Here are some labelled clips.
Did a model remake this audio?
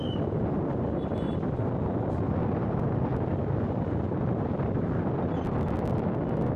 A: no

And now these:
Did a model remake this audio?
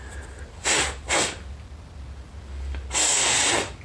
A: no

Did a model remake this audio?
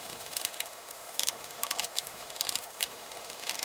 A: yes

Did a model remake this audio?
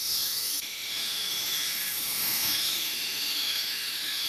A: yes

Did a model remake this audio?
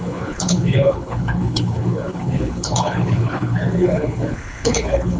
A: yes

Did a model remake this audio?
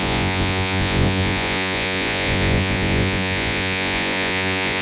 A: yes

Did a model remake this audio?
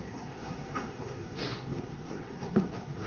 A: yes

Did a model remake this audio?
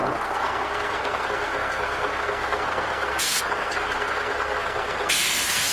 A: yes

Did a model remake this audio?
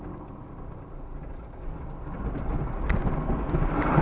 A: no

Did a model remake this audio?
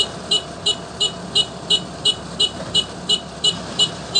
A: no